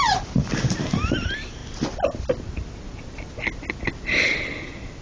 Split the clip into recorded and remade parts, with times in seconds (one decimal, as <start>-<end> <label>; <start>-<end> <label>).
0.0-5.0 recorded